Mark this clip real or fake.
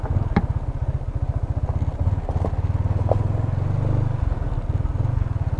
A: real